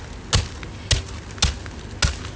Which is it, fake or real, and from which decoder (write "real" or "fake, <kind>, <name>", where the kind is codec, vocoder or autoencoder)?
real